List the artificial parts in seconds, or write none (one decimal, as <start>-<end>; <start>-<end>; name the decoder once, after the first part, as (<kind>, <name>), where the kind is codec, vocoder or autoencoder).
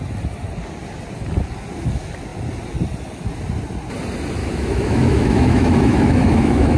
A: 4.4-6.8 (autoencoder, DAC-VAE)